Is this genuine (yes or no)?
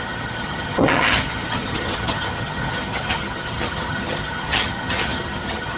no